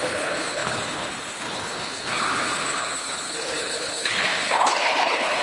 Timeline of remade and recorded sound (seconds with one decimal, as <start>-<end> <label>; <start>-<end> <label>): 0.0-5.4 remade